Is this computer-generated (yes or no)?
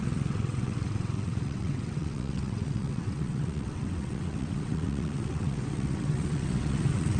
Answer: yes